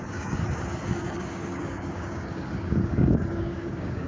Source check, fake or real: fake